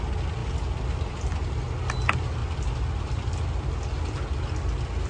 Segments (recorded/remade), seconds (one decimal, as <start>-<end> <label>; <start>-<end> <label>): 0.0-5.1 recorded